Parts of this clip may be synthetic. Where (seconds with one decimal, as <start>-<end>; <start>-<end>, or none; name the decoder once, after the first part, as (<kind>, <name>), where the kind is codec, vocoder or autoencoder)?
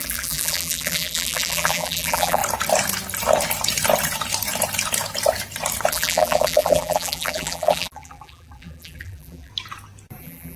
0.0-2.4 (vocoder, BigVGAN v2); 5.9-9.5; 10.2-10.6